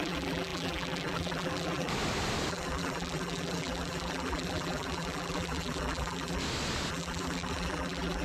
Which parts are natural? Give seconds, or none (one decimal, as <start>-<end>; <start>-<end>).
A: 1.9-2.5; 6.4-6.9